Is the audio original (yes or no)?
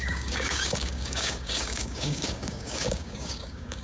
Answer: no